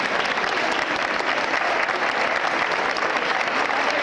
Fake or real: real